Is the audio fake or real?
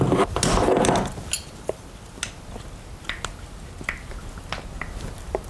real